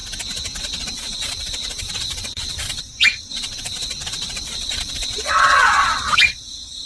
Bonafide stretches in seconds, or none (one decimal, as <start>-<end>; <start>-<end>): 0.0-0.6